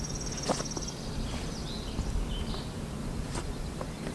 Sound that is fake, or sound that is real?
fake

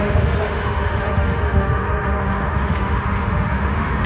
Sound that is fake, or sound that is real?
fake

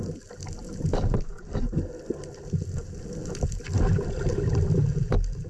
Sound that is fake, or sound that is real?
real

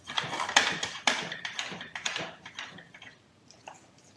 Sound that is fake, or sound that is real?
fake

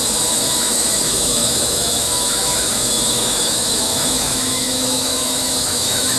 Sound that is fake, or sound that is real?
fake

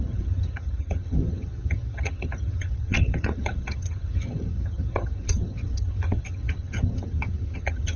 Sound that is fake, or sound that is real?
fake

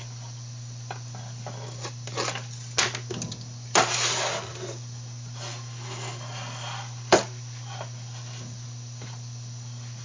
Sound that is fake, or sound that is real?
real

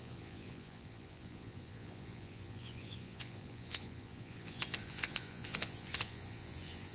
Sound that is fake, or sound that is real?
fake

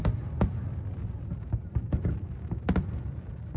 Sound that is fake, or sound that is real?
real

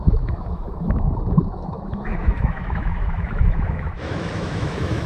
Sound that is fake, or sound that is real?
fake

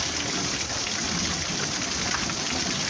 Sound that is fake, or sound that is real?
real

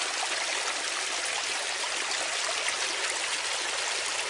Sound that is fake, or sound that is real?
real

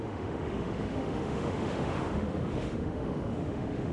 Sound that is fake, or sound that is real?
fake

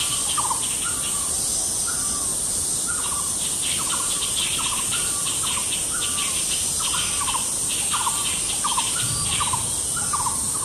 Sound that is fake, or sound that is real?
real